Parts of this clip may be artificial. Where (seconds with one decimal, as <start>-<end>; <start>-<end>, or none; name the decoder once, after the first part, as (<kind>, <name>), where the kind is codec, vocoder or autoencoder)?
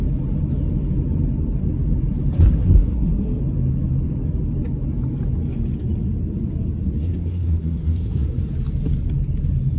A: 2.3-3.4 (codec, SNAC); 7.0-8.4